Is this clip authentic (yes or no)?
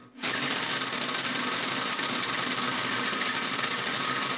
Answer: yes